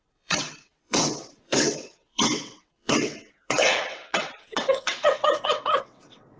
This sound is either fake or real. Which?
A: fake